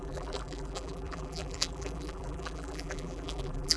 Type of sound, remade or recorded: remade